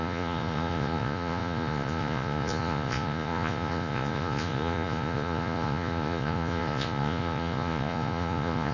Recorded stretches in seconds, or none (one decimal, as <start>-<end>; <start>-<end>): none